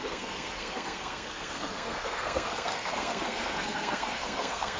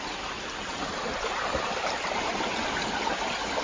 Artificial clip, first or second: first